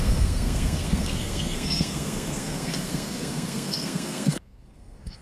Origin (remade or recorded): remade